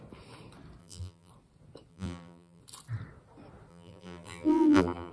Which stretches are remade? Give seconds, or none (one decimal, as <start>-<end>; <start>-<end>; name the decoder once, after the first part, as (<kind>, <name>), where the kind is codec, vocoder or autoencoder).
0.8-1.3 (vocoder, BigVGAN v2); 1.9-2.6; 3.7-5.1